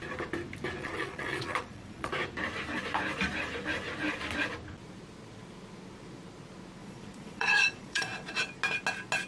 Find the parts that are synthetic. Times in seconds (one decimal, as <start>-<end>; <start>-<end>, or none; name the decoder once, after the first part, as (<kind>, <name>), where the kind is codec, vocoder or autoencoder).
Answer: 0.8-2.1 (vocoder, Vocos); 6.8-8.4